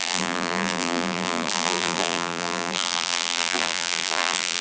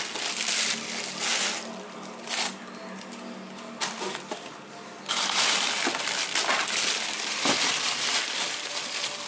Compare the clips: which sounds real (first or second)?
second